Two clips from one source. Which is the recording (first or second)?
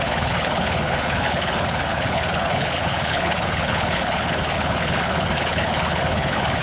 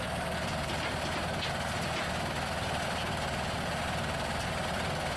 second